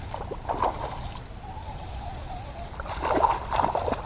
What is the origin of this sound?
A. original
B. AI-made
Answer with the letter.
A